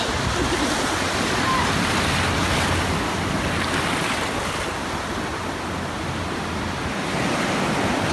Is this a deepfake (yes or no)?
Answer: no